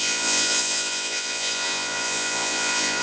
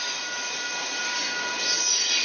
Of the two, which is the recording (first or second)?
second